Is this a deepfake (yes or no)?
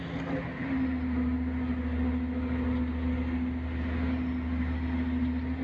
no